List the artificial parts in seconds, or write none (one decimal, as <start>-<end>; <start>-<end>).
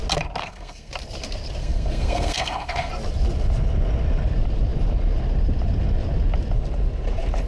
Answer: 0.4-0.9; 1.6-2.9